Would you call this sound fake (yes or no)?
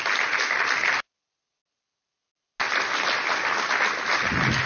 no